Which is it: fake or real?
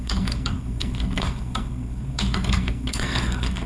fake